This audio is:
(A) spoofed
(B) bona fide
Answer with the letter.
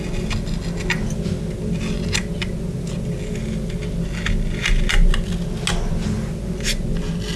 B